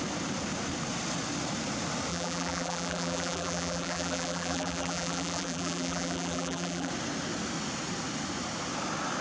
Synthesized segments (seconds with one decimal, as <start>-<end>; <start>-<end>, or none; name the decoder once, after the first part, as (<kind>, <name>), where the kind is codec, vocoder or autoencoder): 2.1-6.9 (vocoder, BigVGAN v2)